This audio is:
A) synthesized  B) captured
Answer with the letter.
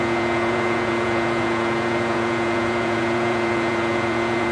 A